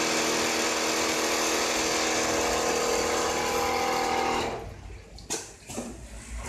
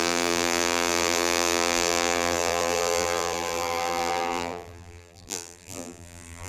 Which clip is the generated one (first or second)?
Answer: second